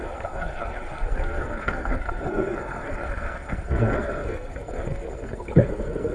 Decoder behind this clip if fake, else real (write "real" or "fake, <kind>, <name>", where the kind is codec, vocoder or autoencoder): fake, codec, SNAC